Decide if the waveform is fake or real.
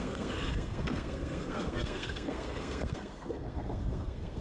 fake